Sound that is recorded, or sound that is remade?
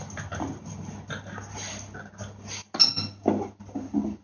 recorded